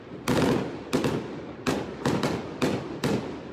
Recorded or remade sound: recorded